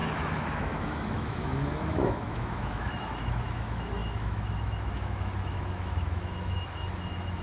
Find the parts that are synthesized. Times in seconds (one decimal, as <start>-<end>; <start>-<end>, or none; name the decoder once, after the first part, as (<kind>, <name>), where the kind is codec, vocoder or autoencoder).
0.0-7.4 (autoencoder, DAC-VAE)